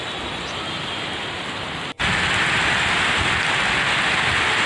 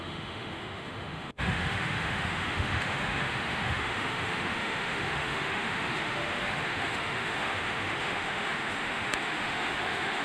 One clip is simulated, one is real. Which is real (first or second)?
first